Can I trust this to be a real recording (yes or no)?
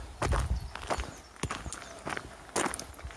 yes